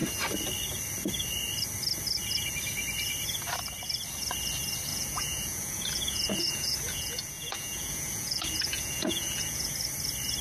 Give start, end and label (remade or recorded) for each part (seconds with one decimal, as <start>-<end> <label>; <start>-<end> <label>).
0.0-4.9 recorded; 4.9-9.7 remade; 9.7-10.4 recorded